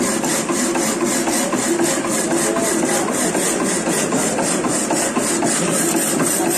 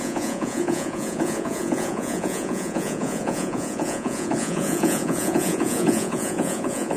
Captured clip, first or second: first